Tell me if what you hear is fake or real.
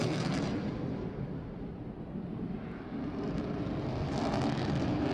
real